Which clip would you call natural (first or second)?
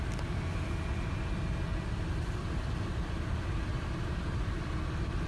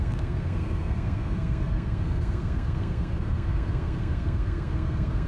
first